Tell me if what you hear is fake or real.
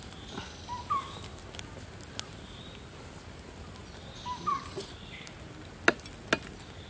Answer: real